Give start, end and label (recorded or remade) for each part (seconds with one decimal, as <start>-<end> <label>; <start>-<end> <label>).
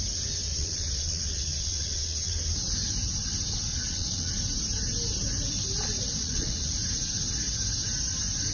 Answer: 0.0-0.5 recorded; 0.5-2.3 remade; 2.3-3.7 recorded; 3.7-4.3 remade; 4.3-6.2 recorded; 6.2-6.7 remade; 6.7-8.5 recorded